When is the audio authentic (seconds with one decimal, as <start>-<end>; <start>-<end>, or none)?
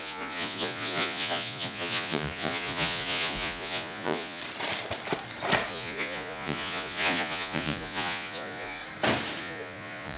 4.4-5.7; 8.8-9.4